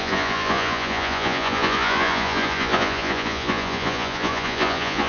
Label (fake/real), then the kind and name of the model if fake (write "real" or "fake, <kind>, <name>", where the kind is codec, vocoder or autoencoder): fake, vocoder, Vocos